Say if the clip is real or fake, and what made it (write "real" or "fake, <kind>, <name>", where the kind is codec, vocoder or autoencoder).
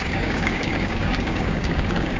fake, codec, DAC